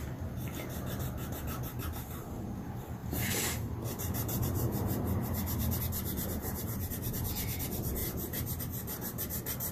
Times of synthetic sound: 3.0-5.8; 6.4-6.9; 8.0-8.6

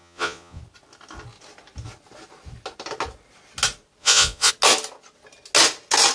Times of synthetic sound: 0.0-0.6; 4.0-4.5

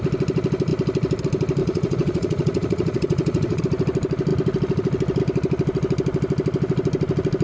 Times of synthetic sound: 1.6-3.6

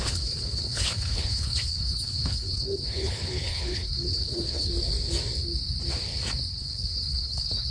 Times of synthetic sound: 0.0-4.7; 6.5-7.7